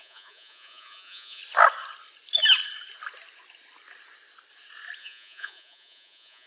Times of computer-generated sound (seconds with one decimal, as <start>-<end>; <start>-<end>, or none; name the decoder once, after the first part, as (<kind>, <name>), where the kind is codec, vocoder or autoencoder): 0.0-1.4 (vocoder, Vocos); 5.0-6.5